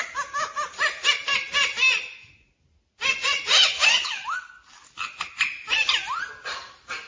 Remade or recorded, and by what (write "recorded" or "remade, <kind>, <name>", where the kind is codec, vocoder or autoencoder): recorded